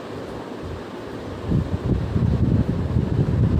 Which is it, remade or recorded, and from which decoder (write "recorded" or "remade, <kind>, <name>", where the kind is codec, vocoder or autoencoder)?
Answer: recorded